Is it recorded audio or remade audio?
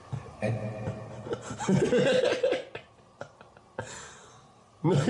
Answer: recorded